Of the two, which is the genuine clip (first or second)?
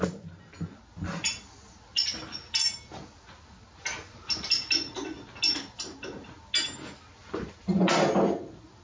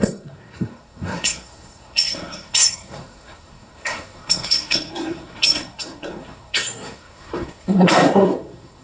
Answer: first